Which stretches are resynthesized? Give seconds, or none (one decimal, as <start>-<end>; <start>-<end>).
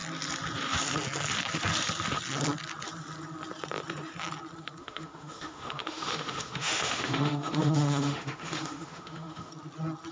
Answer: 4.8-9.5